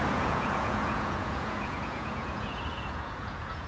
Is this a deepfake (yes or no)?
yes